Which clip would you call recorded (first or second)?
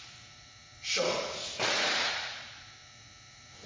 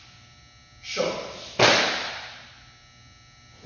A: second